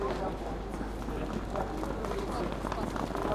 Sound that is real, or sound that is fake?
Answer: real